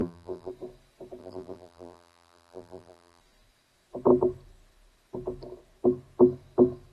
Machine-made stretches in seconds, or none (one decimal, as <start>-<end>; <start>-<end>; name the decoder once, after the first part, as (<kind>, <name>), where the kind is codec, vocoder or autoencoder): 0.0-0.5 (vocoder, BigVGAN v2); 1.2-3.2